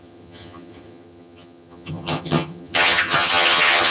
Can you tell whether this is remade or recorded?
remade